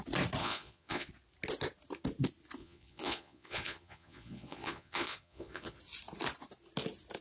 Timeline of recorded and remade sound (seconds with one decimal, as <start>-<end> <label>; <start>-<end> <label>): 0.0-0.4 recorded; 0.4-1.1 remade; 1.1-2.6 recorded; 2.6-5.8 remade; 5.8-7.2 recorded